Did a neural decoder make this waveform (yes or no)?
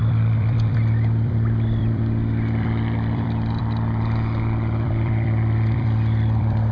yes